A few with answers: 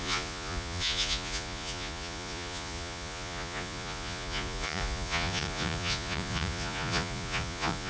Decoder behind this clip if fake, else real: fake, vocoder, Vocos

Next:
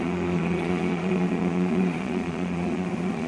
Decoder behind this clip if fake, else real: fake, vocoder, Vocos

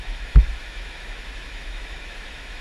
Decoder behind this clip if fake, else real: fake, autoencoder, DAC-VAE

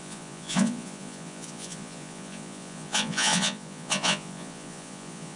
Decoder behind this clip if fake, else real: fake, vocoder, Vocos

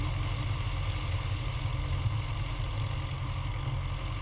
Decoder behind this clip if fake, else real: real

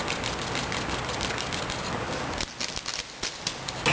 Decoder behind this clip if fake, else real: real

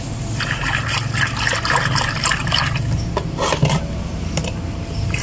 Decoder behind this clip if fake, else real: real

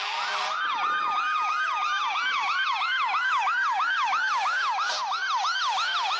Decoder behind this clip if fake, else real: real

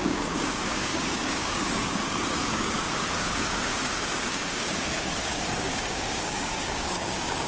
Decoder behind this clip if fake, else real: fake, codec, DAC